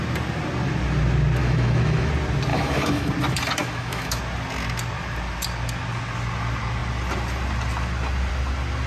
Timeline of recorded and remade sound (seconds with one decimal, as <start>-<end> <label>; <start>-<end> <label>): 0.0-1.4 recorded; 1.4-2.1 remade; 2.1-2.5 recorded; 2.5-3.1 remade; 3.1-3.6 recorded; 3.6-4.2 remade; 4.2-8.9 recorded